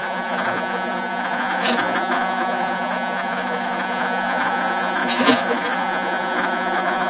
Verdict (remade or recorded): remade